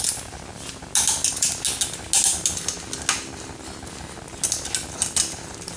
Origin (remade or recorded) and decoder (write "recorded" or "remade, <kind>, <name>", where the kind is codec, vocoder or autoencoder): recorded